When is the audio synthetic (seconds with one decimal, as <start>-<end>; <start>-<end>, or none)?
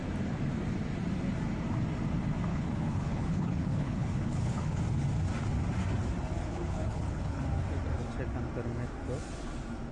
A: 2.5-4.8; 6.4-7.4